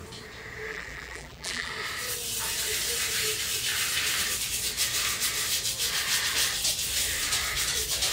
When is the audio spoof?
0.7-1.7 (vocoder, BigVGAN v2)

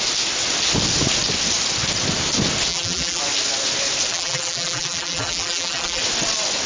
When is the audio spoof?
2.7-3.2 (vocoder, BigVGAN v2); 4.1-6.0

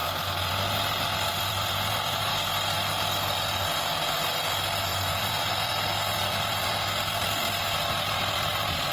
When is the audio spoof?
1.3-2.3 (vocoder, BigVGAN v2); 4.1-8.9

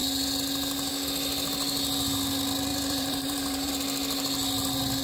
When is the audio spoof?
2.7-3.7 (vocoder, BigVGAN v2)

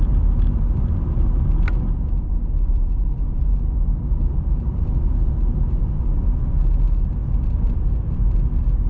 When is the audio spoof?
0.0-8.9 (vocoder, BigVGAN v2)

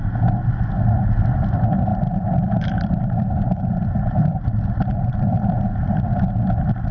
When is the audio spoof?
1.9-6.0 (vocoder, BigVGAN v2)

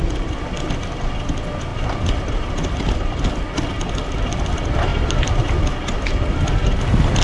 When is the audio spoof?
1.7-2.6 (vocoder, BigVGAN v2); 4.9-5.5